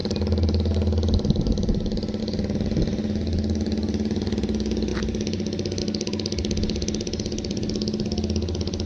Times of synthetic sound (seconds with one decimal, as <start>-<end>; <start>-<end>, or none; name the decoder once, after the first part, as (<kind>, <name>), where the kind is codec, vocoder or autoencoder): none